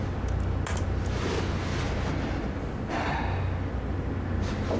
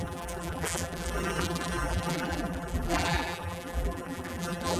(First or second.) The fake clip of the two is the second